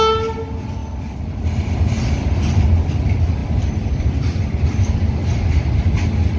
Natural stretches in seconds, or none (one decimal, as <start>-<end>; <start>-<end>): 0.0-0.8; 1.6-3.4; 4.6-6.4